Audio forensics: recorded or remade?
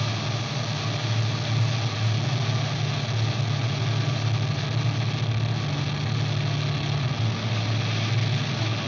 recorded